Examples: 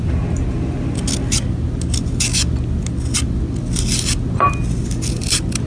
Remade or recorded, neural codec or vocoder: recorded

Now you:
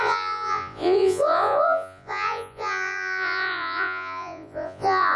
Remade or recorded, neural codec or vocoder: remade, vocoder, Vocos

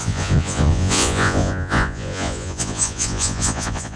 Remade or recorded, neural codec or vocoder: remade, vocoder, Vocos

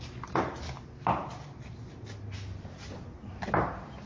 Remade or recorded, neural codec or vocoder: recorded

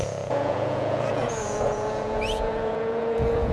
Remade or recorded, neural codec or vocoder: remade, vocoder, Vocos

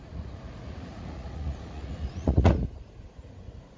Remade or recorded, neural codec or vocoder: remade, vocoder, Vocos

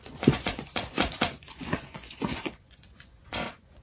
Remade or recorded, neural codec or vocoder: remade, vocoder, Vocos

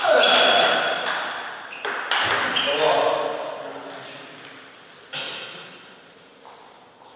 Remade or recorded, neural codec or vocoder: recorded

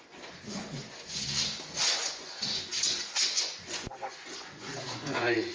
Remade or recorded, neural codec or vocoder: remade, vocoder, Vocos